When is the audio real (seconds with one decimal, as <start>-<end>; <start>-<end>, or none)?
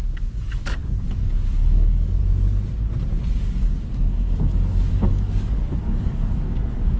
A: 2.2-3.3